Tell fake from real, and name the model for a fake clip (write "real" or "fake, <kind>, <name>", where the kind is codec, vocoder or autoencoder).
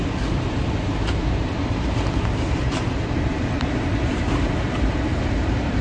fake, vocoder, BigVGAN v2